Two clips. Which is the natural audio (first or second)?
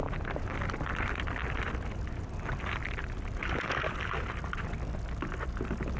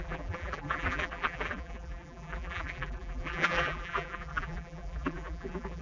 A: first